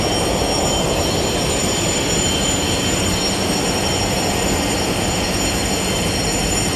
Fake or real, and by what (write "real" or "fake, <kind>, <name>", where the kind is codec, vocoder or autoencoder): real